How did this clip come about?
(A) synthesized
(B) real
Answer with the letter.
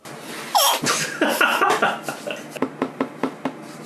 B